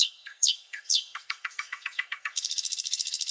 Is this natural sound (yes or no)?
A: no